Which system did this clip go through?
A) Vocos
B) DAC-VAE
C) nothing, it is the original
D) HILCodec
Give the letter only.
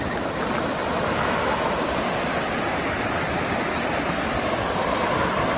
C